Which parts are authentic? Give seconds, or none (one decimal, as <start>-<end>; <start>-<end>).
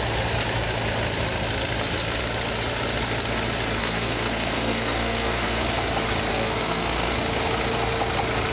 0.0-3.8; 5.6-6.3; 7.1-8.5